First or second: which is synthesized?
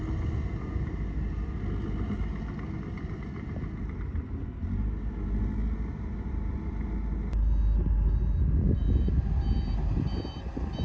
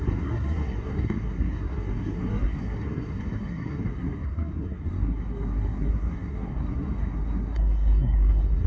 second